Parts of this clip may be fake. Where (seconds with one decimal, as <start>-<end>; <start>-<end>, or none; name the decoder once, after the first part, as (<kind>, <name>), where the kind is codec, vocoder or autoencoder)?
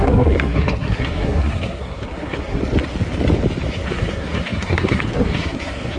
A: 0.0-2.6 (codec, SNAC); 3.7-6.0